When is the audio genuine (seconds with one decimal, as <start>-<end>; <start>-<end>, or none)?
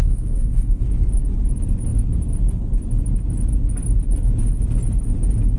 0.8-5.6